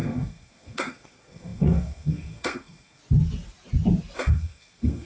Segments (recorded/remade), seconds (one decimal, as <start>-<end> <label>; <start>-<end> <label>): 0.0-3.0 remade; 3.0-4.2 recorded; 4.2-5.1 remade